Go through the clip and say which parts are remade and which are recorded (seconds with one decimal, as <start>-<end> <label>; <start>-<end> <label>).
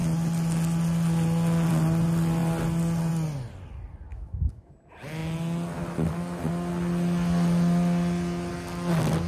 0.0-4.1 recorded; 4.1-4.7 remade; 4.7-9.3 recorded